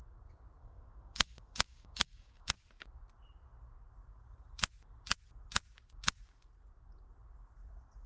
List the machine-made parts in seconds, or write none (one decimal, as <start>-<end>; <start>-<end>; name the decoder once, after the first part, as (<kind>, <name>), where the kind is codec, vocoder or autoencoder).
0.6-2.5 (codec, DAC)